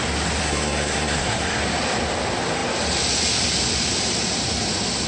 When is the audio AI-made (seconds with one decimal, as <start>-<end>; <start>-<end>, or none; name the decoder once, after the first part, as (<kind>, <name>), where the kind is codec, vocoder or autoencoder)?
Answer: 0.4-1.6 (codec, SNAC)